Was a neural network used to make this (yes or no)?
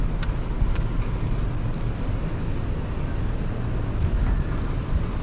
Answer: no